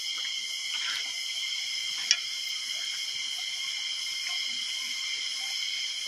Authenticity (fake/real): real